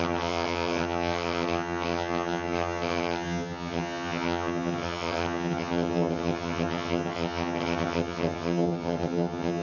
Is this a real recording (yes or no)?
no